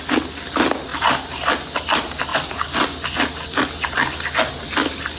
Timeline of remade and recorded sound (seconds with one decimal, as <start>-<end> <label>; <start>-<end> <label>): 0.0-0.9 recorded; 0.9-1.5 remade; 1.5-5.2 recorded